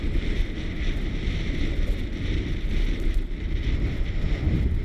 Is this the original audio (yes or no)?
yes